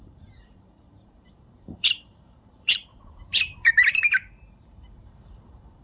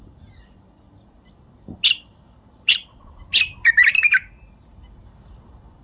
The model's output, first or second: first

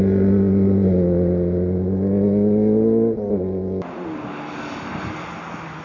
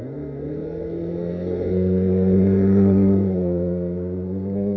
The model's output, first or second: second